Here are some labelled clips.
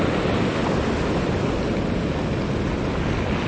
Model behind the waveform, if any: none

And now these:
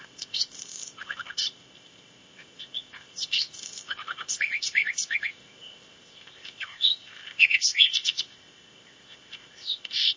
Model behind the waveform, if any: codec, ZipCodec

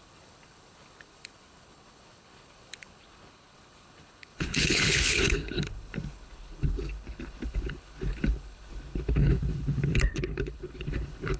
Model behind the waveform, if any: codec, HILCodec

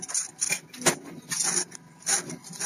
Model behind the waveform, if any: none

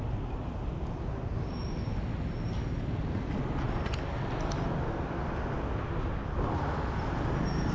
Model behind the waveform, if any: none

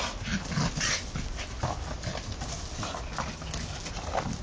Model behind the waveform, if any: none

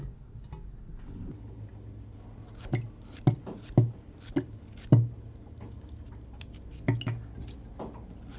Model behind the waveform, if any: none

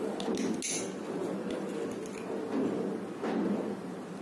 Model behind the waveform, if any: none